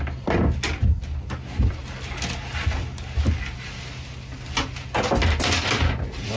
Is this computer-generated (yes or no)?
no